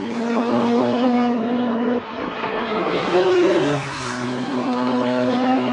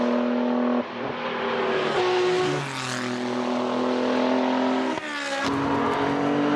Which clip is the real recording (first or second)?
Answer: second